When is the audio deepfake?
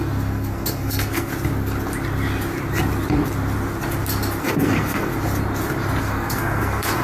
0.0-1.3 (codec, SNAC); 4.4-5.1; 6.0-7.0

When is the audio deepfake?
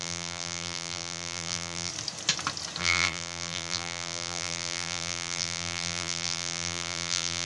0.0-1.9 (vocoder, BigVGAN v2); 2.8-7.5